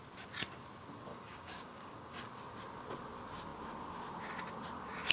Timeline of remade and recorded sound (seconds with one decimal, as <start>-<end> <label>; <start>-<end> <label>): 0.0-1.1 recorded; 1.1-2.2 remade; 2.2-5.1 recorded